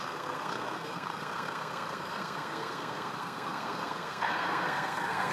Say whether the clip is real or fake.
fake